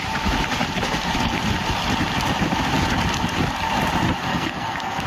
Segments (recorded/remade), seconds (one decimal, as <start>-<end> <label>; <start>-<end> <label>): 0.0-4.3 recorded; 4.3-5.1 remade